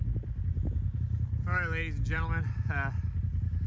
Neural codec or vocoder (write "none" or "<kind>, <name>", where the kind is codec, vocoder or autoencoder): none